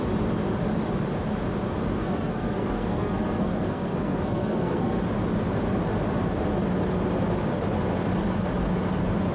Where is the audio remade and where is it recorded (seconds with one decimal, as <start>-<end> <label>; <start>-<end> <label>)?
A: 0.0-2.0 recorded; 2.0-5.0 remade; 5.0-9.3 recorded

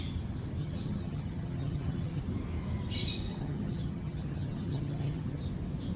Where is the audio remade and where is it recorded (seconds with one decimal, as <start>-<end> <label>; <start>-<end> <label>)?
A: 0.0-0.6 recorded; 0.6-2.2 remade; 2.2-3.3 recorded; 3.3-5.4 remade; 5.4-6.0 recorded

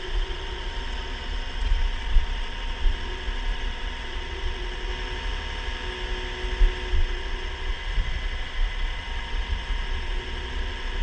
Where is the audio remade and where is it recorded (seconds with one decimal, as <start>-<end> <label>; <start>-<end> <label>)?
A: 0.0-4.9 remade; 4.9-6.9 recorded; 6.9-11.0 remade

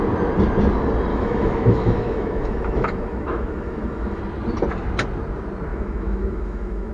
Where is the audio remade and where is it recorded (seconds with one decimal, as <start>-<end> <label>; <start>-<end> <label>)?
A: 0.0-1.1 recorded; 1.1-4.2 remade; 4.2-5.7 recorded; 5.7-6.9 remade